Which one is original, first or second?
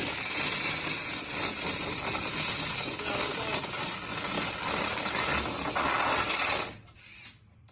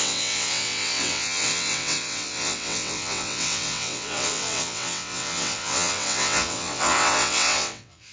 first